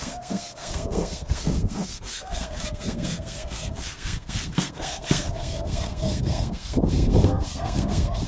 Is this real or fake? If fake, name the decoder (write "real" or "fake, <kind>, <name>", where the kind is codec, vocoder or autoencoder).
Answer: fake, codec, SNAC